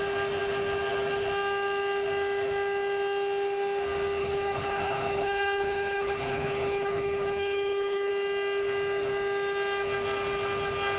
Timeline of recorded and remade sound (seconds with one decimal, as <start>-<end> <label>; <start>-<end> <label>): 0.0-4.2 recorded; 4.2-8.1 remade; 8.1-11.0 recorded